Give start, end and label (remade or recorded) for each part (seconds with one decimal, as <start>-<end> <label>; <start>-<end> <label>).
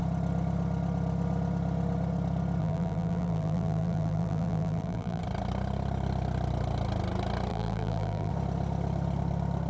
0.0-2.6 recorded; 2.6-5.2 remade; 5.2-7.5 recorded; 7.5-8.3 remade; 8.3-9.7 recorded